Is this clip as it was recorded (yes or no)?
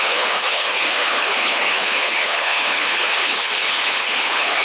no